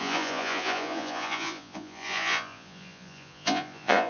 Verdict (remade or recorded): remade